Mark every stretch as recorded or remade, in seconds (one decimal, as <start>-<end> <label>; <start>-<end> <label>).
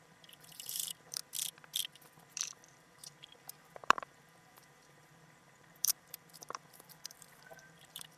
0.0-1.2 remade; 1.2-2.2 recorded; 2.2-8.2 remade